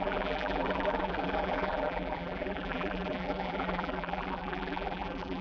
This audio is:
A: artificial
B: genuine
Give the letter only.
A